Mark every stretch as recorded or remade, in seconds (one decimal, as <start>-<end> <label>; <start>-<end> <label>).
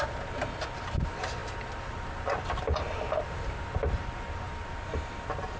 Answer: 0.0-5.6 recorded